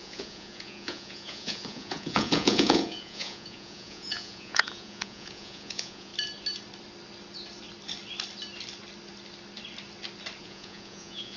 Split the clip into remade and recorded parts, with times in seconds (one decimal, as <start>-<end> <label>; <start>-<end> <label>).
0.0-6.1 remade; 6.1-10.4 recorded; 10.4-11.4 remade